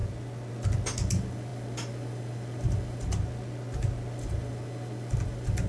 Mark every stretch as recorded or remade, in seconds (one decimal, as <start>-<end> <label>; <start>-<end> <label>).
0.0-5.7 recorded